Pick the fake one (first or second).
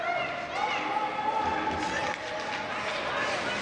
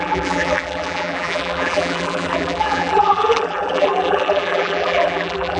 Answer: second